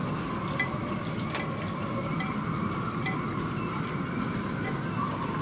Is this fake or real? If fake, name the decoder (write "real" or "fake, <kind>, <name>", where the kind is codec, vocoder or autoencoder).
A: real